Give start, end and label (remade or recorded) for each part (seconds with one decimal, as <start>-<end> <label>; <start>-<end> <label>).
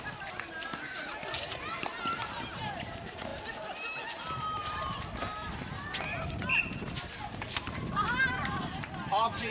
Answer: 0.0-1.9 remade; 1.9-2.6 recorded; 2.6-3.3 remade; 3.3-4.2 recorded; 4.2-5.6 remade; 5.6-7.2 recorded; 7.2-9.5 remade